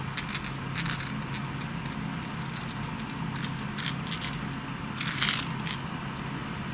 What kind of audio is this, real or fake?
real